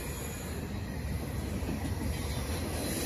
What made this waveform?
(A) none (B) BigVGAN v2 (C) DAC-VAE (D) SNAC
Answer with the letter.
A